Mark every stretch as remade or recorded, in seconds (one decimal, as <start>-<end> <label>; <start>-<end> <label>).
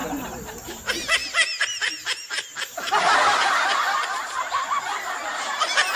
0.0-6.0 recorded